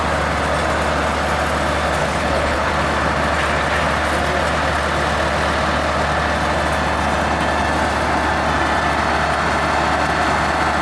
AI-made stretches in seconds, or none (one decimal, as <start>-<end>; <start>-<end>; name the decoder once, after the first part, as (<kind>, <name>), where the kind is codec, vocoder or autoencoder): 2.0-2.7 (codec, HILCodec)